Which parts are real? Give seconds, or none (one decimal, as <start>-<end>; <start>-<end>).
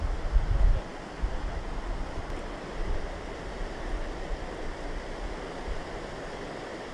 0.0-6.9